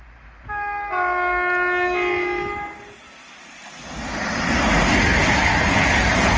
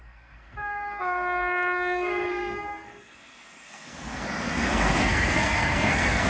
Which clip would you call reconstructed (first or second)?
second